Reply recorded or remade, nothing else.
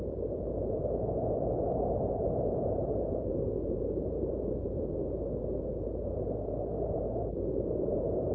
remade